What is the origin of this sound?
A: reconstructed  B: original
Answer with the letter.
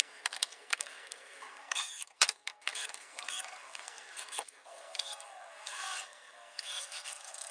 A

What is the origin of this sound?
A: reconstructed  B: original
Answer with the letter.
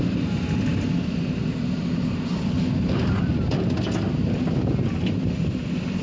B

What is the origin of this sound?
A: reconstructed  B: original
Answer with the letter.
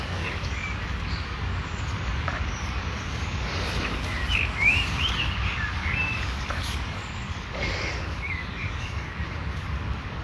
A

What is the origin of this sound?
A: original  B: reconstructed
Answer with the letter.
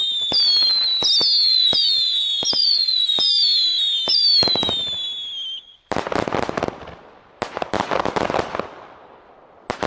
A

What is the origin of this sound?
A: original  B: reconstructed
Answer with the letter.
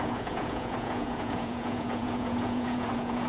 B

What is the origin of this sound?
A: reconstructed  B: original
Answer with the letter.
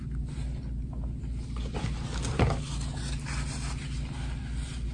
B